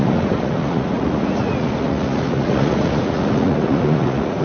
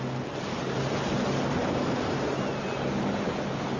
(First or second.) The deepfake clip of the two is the first